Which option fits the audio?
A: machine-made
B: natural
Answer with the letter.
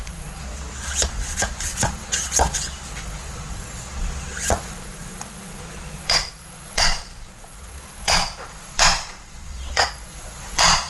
A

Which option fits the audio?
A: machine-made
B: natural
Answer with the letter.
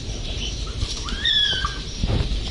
A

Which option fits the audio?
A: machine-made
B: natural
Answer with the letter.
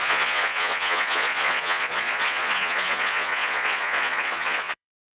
A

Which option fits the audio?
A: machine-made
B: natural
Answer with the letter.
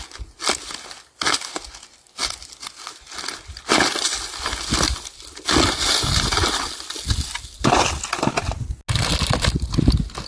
B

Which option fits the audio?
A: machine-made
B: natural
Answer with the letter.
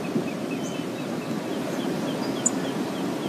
B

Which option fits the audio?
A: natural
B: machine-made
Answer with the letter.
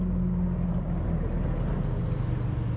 A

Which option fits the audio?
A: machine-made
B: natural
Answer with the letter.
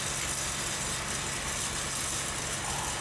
B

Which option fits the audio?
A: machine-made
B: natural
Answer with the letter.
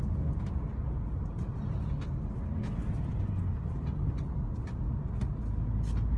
B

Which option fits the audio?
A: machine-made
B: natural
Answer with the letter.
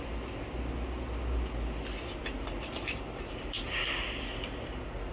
B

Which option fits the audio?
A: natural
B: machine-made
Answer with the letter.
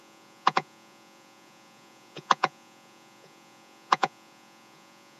B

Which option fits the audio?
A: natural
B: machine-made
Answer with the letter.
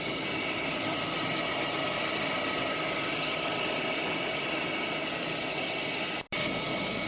A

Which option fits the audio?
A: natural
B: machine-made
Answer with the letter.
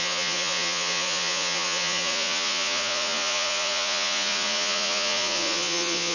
B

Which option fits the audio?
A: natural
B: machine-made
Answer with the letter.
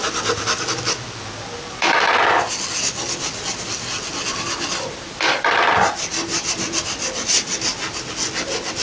A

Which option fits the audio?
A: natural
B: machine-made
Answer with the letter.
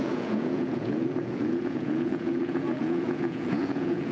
B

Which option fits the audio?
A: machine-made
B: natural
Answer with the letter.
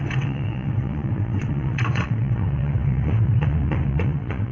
A